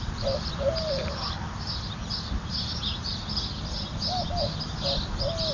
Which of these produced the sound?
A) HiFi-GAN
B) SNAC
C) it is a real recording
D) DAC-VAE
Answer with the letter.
C